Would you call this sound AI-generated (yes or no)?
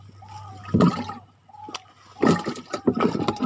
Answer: no